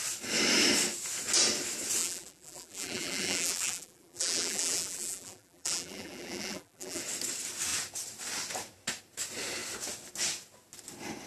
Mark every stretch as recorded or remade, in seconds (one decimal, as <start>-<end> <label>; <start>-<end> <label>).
0.0-2.0 recorded; 2.0-7.0 remade; 7.0-11.3 recorded